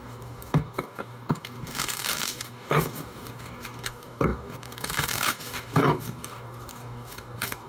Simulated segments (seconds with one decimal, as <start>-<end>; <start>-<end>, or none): 0.0-7.7